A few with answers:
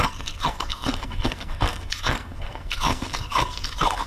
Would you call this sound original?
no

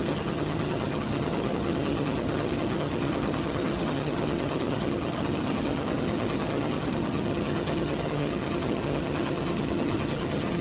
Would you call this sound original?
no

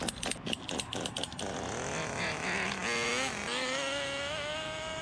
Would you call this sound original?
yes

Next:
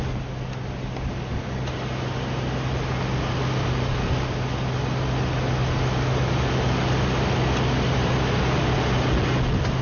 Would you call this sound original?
yes